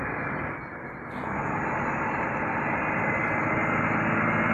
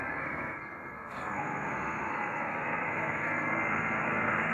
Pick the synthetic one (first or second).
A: second